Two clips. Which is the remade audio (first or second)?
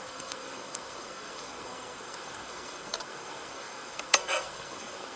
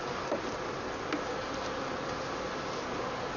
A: first